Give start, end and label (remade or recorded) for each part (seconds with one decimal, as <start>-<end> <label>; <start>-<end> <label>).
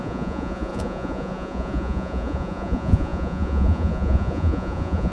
0.0-5.1 remade